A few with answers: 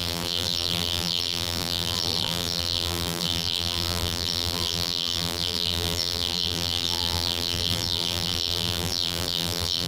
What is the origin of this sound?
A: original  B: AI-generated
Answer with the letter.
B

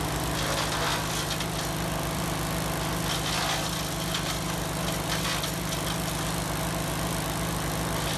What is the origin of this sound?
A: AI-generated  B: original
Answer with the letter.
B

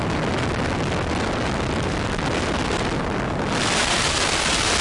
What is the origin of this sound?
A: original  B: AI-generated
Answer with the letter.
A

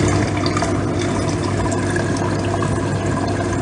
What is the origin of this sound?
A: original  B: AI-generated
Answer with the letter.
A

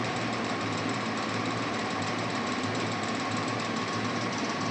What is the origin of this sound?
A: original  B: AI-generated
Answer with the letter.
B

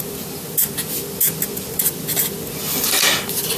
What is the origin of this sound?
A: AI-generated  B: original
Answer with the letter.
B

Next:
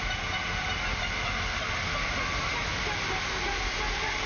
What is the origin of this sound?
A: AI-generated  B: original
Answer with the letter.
B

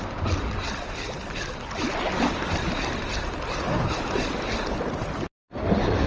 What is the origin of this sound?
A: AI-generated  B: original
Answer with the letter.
B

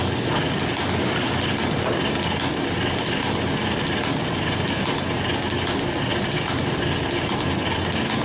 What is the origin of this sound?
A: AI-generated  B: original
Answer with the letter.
B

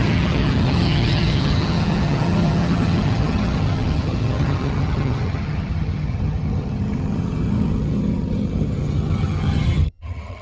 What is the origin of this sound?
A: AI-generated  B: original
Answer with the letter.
A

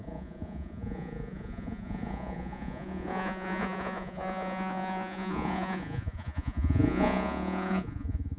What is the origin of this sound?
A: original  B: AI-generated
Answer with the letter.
B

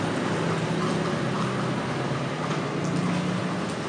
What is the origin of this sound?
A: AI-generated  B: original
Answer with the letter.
B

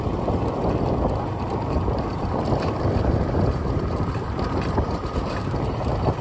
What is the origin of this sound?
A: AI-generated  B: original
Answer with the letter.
A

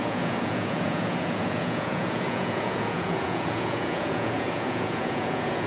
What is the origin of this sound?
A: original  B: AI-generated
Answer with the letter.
B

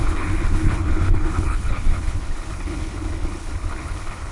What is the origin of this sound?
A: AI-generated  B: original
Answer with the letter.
A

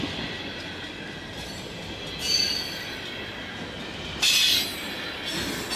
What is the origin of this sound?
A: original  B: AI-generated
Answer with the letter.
A